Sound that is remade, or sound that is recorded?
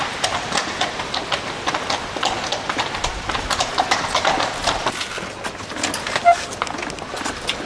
recorded